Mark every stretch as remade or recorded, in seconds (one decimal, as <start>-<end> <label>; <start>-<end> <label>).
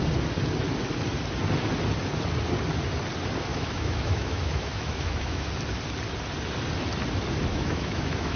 0.0-3.5 recorded; 3.5-5.5 remade; 5.5-7.5 recorded; 7.5-8.4 remade